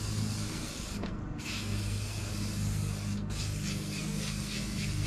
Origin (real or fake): fake